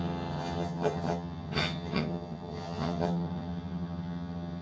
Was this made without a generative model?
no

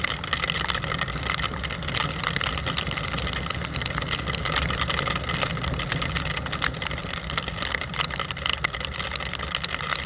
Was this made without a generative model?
yes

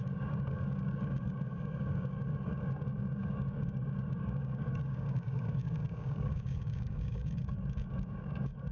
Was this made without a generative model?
no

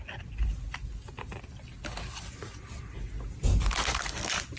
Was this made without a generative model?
yes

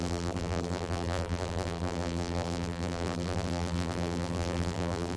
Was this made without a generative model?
no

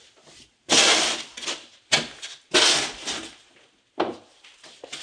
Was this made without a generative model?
yes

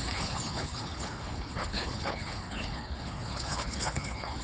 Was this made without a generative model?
no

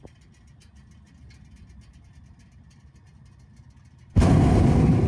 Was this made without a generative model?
yes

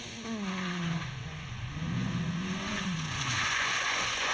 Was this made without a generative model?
no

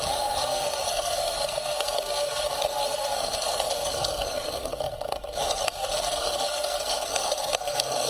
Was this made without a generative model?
no